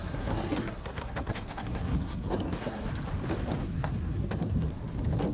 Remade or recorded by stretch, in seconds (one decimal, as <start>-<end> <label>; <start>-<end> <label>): 0.0-2.9 remade; 2.9-3.6 recorded; 3.6-4.7 remade; 4.7-5.3 recorded